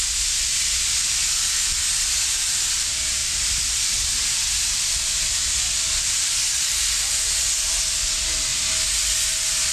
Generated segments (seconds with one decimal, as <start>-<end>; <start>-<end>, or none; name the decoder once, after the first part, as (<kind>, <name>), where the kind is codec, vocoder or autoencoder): 3.2-6.8 (vocoder, BigVGAN v2)